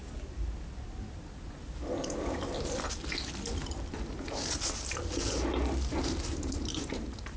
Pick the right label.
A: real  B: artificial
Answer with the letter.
A